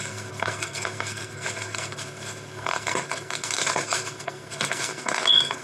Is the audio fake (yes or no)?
yes